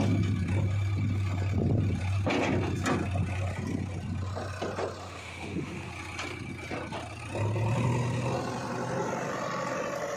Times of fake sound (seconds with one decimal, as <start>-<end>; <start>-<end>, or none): 5.0-5.9